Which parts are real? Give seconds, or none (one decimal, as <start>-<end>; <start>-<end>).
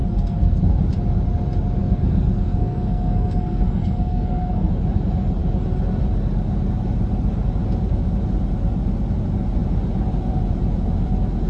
0.8-1.8; 4.7-11.5